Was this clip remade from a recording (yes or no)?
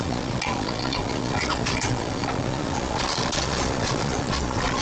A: yes